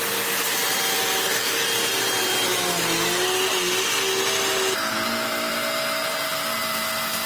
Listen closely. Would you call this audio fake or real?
real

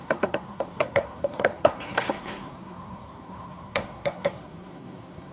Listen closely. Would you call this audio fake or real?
fake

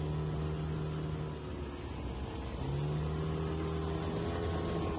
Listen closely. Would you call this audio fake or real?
real